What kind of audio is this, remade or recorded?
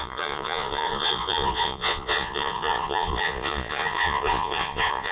remade